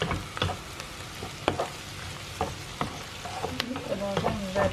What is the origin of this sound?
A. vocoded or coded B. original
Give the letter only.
B